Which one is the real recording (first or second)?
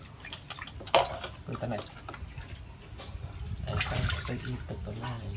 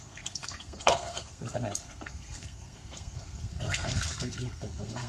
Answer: first